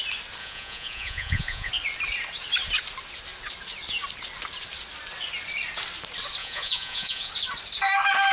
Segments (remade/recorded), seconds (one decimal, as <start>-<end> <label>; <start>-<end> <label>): 0.0-0.4 recorded; 0.4-1.7 remade; 1.7-6.4 recorded; 6.4-7.3 remade; 7.3-8.3 recorded